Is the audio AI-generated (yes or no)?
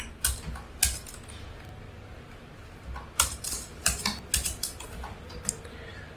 no